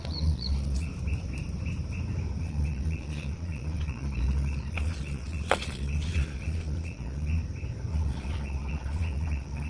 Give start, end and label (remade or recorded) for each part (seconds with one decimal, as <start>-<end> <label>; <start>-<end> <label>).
0.0-0.9 remade; 0.9-2.4 recorded; 2.4-7.4 remade; 7.4-7.9 recorded; 7.9-9.7 remade